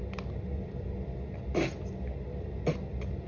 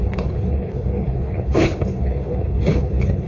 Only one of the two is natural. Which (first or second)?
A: first